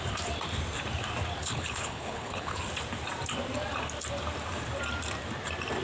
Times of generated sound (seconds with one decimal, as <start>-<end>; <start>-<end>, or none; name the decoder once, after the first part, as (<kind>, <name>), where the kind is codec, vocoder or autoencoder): 1.4-2.7 (codec, HILCodec)